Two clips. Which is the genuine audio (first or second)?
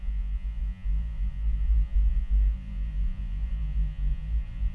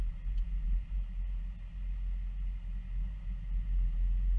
second